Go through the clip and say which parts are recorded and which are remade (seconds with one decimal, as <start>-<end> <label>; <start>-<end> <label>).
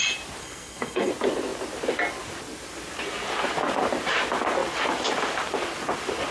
0.0-0.4 recorded; 0.4-1.1 remade; 1.1-6.3 recorded